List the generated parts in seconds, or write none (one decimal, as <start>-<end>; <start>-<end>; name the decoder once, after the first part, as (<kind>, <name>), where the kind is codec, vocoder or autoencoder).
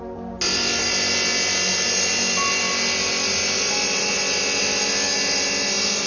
none